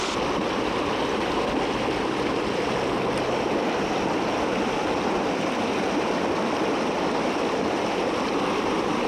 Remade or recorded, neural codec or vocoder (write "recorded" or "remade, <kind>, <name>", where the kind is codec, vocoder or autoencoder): recorded